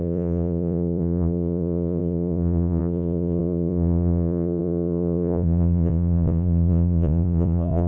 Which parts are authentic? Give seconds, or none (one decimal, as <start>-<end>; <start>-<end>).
none